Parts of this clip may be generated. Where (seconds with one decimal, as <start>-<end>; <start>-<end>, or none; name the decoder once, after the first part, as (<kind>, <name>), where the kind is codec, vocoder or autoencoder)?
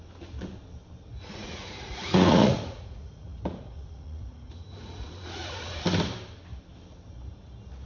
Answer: 1.1-5.8 (vocoder, Vocos)